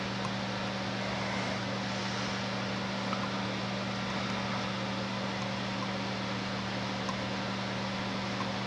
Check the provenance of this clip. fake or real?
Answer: real